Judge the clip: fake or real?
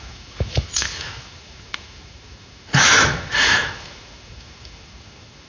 fake